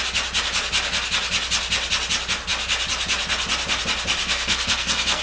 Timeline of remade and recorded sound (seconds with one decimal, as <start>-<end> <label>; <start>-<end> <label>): 0.0-4.2 recorded; 4.2-5.2 remade